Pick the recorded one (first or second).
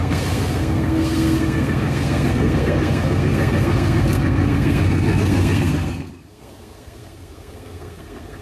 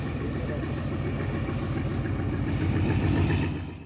second